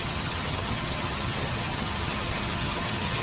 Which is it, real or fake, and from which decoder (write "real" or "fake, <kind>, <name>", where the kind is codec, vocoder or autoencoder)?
fake, vocoder, HiFi-GAN